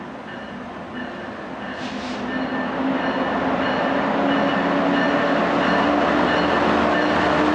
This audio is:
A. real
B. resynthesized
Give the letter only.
A